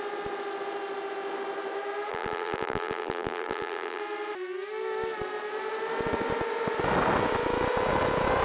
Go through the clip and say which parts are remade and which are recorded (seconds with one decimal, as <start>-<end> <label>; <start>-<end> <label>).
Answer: 0.0-2.1 recorded; 2.1-4.0 remade; 4.0-8.4 recorded